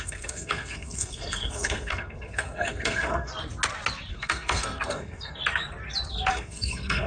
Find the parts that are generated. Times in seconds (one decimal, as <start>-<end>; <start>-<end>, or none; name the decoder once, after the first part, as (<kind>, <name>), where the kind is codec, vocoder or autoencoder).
0.0-3.3 (codec, SNAC); 4.1-5.4; 6.3-7.1